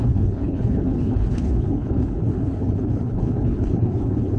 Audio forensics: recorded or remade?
remade